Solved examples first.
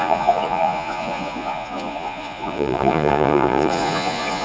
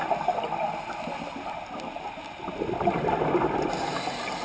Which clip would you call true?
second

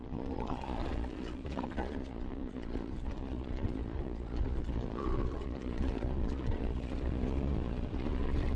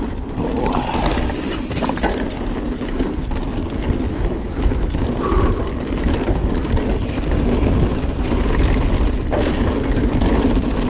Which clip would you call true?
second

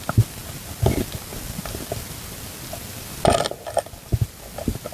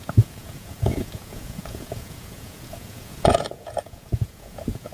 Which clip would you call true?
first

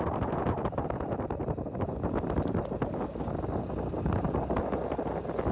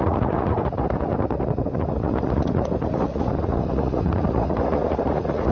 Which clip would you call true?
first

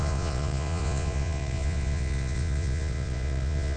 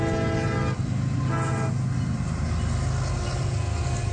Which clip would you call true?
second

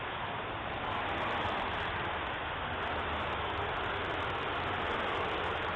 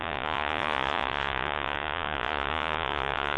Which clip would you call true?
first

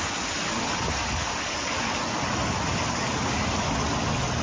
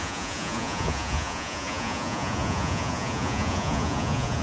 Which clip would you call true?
first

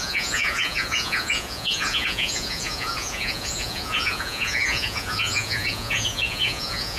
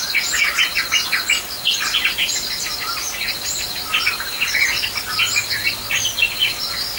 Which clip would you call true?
second